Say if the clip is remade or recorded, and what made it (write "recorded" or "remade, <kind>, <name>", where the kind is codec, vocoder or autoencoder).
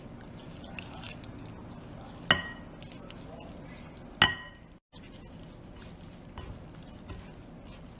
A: recorded